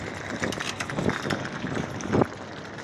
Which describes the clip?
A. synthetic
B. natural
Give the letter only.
B